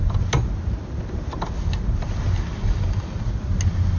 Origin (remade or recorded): recorded